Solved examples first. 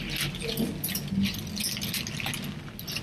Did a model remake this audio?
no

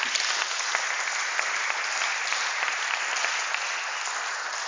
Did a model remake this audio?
no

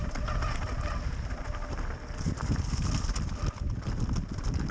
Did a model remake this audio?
yes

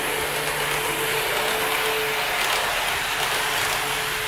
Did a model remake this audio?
no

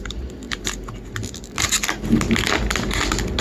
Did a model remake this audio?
no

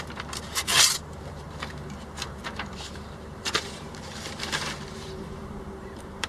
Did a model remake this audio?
yes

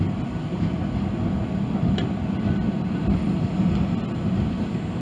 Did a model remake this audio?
no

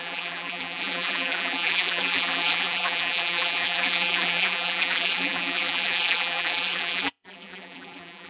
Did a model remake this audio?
yes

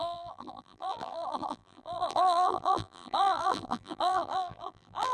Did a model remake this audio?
yes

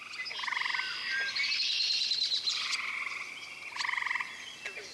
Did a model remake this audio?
no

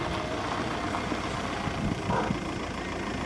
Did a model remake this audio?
yes